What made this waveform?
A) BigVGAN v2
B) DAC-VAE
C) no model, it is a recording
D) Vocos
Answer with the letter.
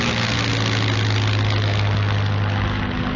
C